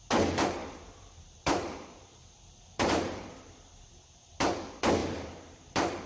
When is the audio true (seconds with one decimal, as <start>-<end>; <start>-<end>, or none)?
0.0-0.6; 4.3-5.0